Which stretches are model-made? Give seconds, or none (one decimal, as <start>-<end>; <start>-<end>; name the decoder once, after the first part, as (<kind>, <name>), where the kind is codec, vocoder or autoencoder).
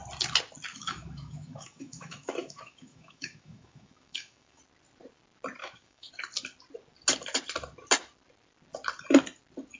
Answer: 0.7-4.6 (autoencoder, DAC-VAE); 5.6-6.1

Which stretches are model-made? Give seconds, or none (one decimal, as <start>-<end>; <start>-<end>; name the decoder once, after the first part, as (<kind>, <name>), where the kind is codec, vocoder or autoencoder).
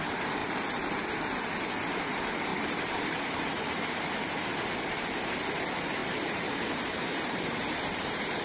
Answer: 2.5-4.0 (vocoder, BigVGAN v2); 6.0-8.4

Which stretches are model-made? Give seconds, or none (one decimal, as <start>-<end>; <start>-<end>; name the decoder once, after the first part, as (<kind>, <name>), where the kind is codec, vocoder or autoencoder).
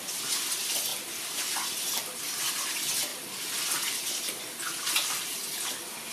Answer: 0.9-2.4 (vocoder, BigVGAN v2)